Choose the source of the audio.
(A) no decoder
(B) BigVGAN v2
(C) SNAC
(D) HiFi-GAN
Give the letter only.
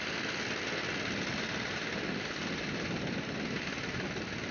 A